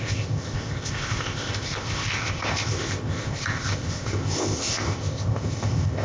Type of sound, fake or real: fake